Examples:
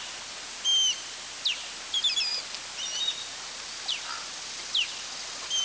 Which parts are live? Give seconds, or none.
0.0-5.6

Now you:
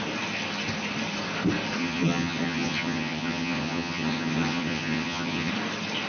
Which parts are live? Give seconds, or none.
0.0-1.8; 5.5-6.1

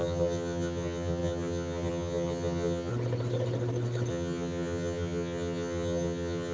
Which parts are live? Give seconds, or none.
2.9-4.1

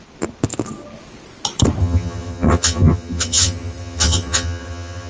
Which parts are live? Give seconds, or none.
0.0-1.8

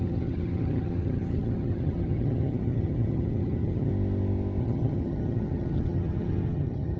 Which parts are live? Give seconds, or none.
3.9-4.6

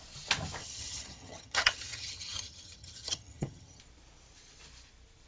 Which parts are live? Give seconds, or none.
0.0-0.6; 3.8-5.3